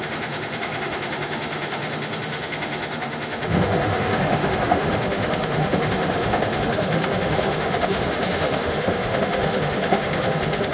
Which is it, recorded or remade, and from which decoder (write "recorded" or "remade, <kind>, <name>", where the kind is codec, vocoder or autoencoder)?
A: remade, autoencoder, DAC-VAE